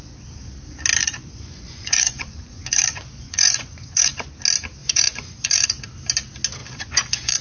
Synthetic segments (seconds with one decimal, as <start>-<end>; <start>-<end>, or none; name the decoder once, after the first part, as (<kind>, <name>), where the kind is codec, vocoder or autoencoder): 1.0-4.3 (vocoder, Vocos); 4.8-5.8; 6.6-7.4